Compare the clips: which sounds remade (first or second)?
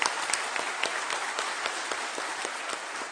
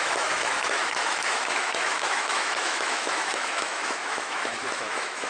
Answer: second